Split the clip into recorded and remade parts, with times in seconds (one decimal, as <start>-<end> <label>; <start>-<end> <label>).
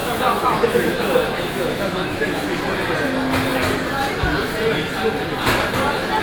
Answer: 0.0-2.6 remade; 2.6-6.2 recorded